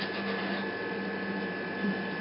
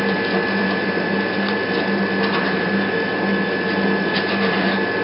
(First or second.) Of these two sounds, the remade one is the second